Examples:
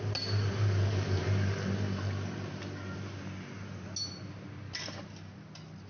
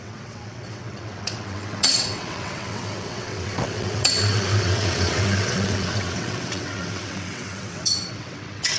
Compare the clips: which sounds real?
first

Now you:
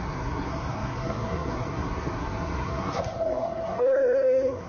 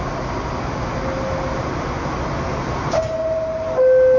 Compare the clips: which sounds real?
second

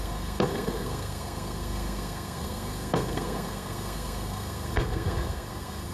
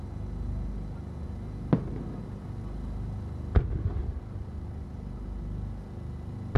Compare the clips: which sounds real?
second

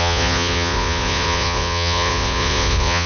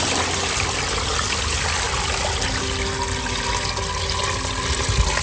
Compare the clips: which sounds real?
second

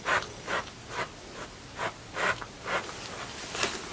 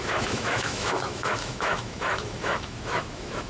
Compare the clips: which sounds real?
first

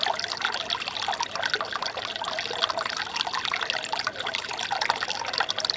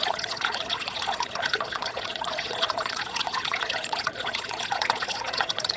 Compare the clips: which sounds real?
first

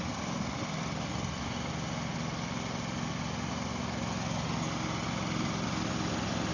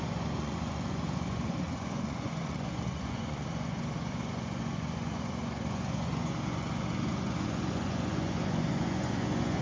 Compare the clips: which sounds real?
first